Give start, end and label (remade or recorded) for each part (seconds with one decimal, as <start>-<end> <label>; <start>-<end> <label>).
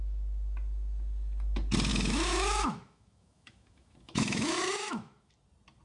0.0-1.9 recorded; 1.9-5.3 remade; 5.3-5.8 recorded